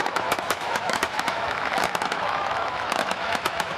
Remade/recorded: remade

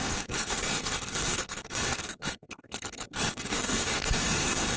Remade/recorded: remade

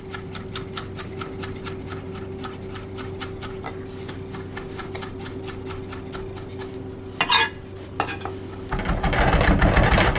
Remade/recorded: recorded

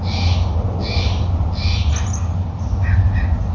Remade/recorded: recorded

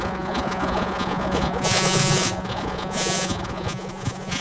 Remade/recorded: remade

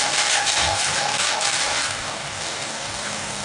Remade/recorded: remade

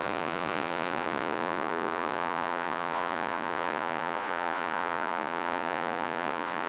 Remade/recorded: remade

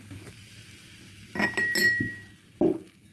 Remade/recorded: recorded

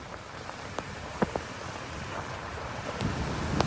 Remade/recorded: recorded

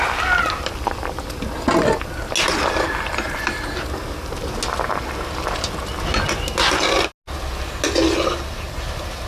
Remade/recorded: recorded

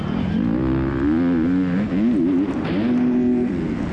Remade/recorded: recorded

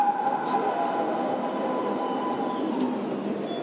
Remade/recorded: recorded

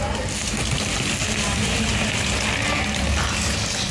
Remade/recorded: recorded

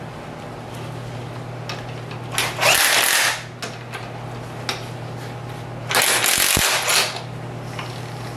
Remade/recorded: recorded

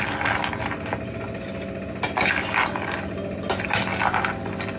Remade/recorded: recorded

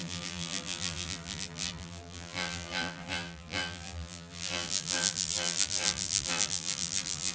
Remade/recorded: remade